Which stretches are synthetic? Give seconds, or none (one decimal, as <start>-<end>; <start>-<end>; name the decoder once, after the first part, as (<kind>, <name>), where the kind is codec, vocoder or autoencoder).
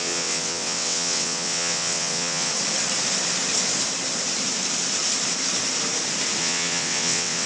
0.0-2.5 (vocoder, WaveNeXt); 6.4-7.5